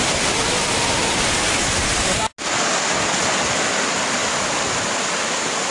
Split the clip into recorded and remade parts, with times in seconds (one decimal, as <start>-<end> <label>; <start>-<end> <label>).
0.0-5.7 recorded